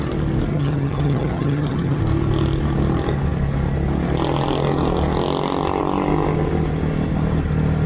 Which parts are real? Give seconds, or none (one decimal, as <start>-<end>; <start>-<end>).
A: 0.0-0.5; 2.0-7.9